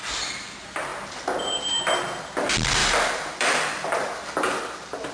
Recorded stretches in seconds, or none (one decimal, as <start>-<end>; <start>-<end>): 0.0-5.1